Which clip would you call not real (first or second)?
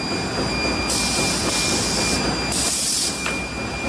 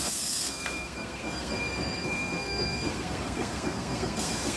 second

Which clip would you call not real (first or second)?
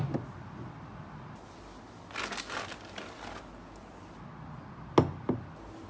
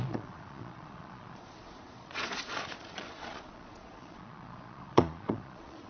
second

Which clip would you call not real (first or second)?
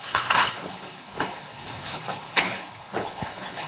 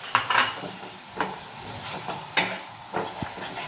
first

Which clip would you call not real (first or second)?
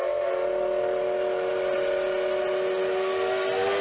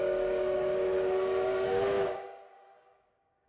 second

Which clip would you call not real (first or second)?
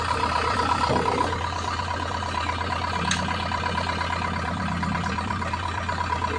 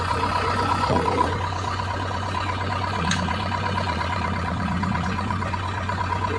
second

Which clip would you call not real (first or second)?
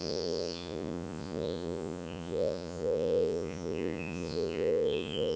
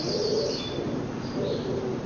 first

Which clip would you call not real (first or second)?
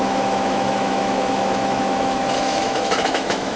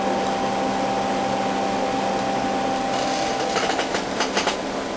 first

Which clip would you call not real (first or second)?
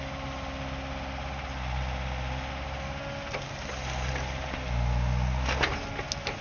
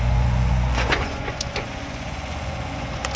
second